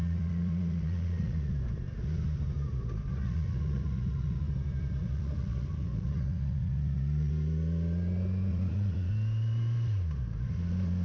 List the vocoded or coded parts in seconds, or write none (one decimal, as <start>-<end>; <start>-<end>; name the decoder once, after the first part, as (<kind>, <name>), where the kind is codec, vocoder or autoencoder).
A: 0.0-1.5 (vocoder, Vocos); 3.1-4.5; 5.0-7.3; 8.5-9.1